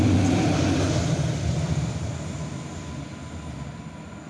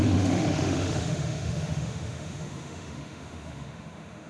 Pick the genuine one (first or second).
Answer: first